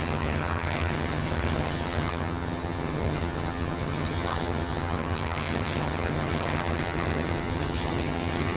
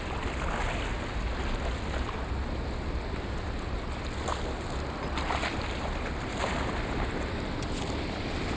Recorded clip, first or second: second